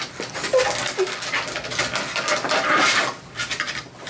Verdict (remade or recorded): recorded